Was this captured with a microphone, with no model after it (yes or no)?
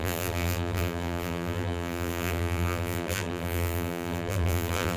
no